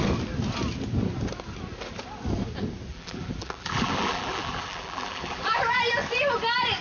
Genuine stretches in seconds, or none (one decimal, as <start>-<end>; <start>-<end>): 0.0-2.9; 5.8-6.8